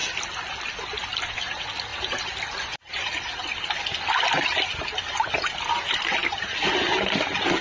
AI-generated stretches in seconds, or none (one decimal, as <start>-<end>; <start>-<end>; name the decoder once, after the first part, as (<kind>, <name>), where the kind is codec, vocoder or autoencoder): none